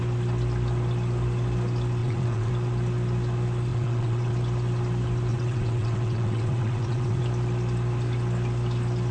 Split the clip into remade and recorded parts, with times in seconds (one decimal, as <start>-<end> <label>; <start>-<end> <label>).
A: 0.0-2.0 recorded; 2.0-2.5 remade; 2.5-3.7 recorded; 3.7-4.3 remade; 4.3-5.3 recorded; 5.3-7.2 remade; 7.2-9.1 recorded